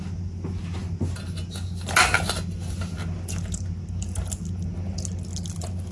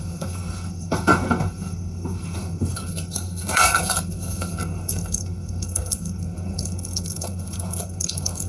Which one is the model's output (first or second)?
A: second